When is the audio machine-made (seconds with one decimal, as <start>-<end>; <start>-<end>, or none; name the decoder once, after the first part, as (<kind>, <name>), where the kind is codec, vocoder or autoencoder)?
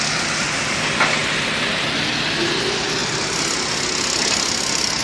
none